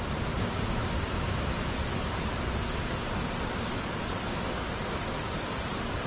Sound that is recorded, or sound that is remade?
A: recorded